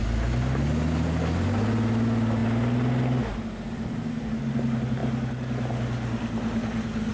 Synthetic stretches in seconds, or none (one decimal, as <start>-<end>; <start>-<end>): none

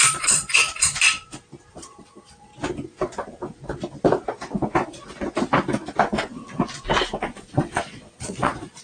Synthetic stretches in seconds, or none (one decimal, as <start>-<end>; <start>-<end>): 0.0-0.9; 1.7-2.5; 7.2-8.8

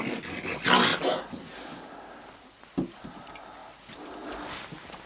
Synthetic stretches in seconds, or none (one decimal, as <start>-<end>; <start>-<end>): none

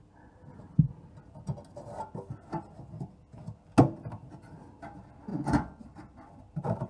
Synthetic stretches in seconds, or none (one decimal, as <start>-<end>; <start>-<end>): 5.3-5.8

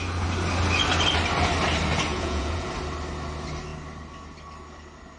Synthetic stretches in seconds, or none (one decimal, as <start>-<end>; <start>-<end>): 2.1-2.7

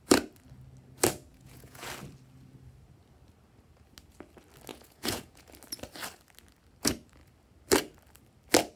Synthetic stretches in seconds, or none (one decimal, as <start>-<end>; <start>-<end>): 1.3-1.9; 4.7-5.5

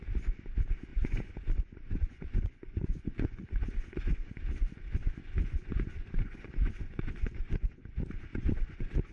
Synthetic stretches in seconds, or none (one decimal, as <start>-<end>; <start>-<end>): 0.9-4.4; 5.0-7.9; 8.3-9.1

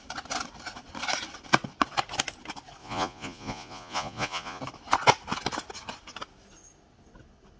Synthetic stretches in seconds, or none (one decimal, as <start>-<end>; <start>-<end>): 2.8-4.6